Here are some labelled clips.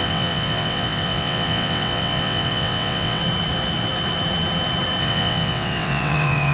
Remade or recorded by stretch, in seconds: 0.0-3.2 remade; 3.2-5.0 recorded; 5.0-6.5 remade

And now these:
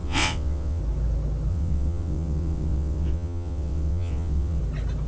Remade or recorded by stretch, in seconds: 0.0-0.8 remade; 0.8-1.5 recorded; 1.5-4.6 remade; 4.6-5.1 recorded

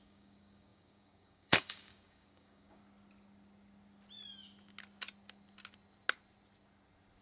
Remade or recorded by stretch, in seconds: 0.0-2.8 remade; 2.8-7.2 recorded

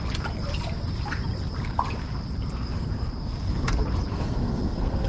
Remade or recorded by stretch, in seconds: 0.0-4.1 recorded; 4.1-5.1 remade

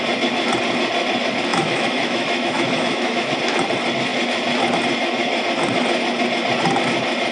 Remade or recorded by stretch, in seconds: 0.0-1.5 recorded; 1.5-3.3 remade; 3.3-7.3 recorded

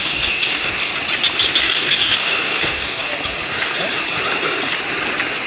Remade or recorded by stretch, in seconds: 0.0-0.9 remade; 0.9-1.6 recorded; 1.6-3.1 remade; 3.1-5.5 recorded